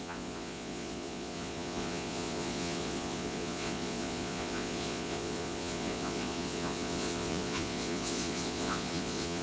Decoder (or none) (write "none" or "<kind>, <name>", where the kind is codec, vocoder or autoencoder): vocoder, Vocos